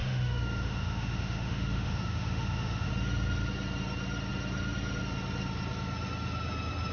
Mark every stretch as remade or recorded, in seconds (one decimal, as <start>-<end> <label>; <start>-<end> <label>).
0.0-2.9 remade; 2.9-6.9 recorded